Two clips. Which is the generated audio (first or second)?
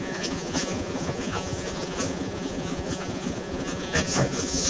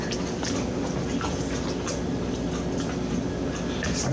first